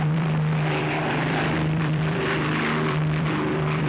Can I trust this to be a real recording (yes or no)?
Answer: no